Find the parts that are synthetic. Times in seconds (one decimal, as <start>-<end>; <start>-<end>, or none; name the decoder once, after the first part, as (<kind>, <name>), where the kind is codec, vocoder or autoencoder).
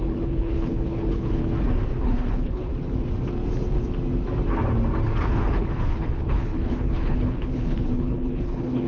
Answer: 0.0-1.4 (codec, HILCodec); 2.0-2.7; 5.2-8.9